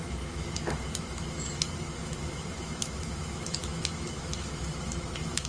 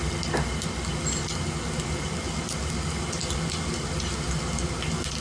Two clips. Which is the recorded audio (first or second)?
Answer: second